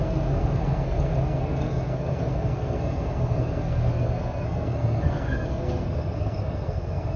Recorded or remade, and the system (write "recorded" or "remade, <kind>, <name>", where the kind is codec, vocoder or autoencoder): remade, codec, SNAC